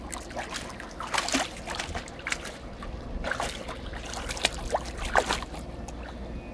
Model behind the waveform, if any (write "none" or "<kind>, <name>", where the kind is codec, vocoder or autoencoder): none